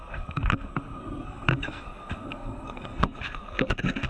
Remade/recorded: remade